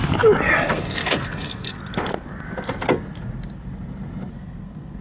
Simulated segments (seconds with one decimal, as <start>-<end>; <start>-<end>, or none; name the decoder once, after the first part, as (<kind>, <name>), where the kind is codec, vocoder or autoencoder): 0.7-1.8 (codec, SNAC); 4.3-5.0